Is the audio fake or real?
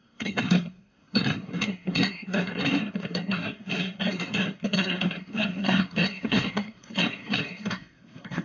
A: fake